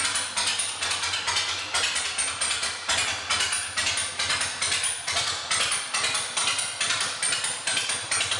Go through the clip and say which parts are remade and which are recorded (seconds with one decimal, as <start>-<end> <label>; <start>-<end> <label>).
0.0-8.4 recorded